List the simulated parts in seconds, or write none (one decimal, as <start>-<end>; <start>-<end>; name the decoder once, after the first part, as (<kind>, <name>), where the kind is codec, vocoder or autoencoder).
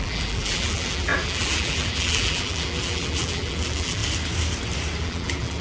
0.0-4.0 (vocoder, BigVGAN v2); 5.0-5.6